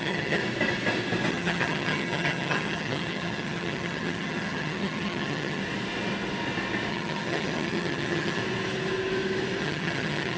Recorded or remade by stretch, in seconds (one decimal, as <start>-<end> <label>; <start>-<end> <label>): 0.0-0.4 remade; 0.4-1.3 recorded; 1.3-5.6 remade; 5.6-6.9 recorded; 6.9-8.4 remade; 8.4-9.6 recorded; 9.6-10.4 remade